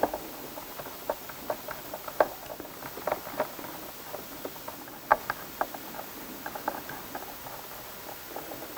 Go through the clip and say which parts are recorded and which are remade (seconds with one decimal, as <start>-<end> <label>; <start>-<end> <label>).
0.0-5.1 recorded; 5.1-5.7 remade; 5.7-8.8 recorded